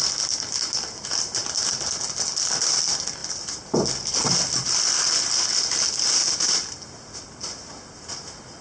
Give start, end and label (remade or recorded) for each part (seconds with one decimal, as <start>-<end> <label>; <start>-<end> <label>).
0.0-8.6 recorded

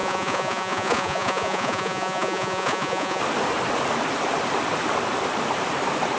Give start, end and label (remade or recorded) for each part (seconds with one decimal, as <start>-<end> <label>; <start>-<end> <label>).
0.0-3.2 remade; 3.2-6.2 recorded

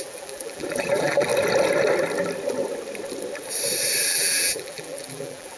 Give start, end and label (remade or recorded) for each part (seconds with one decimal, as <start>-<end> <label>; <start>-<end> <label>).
0.0-1.3 remade; 1.3-4.0 recorded; 4.0-5.6 remade